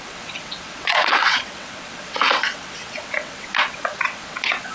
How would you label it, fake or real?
fake